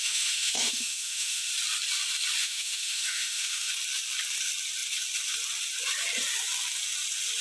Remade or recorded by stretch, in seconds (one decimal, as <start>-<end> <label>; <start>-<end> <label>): 0.0-1.5 remade; 1.5-2.4 recorded; 2.4-3.7 remade; 3.7-7.4 recorded

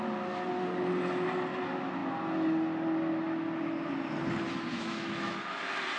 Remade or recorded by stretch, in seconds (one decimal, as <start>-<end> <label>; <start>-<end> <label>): 0.0-4.7 recorded; 4.7-5.6 remade; 5.6-6.0 recorded

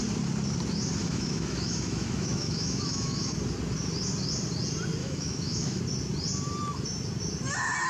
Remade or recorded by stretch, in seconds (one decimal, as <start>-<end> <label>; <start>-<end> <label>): 0.0-1.0 recorded; 1.0-3.3 remade; 3.3-5.0 recorded; 5.0-5.8 remade; 5.8-7.9 recorded